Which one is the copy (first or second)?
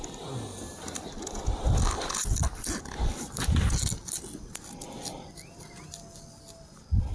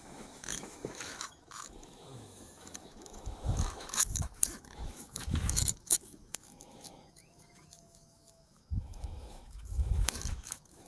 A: second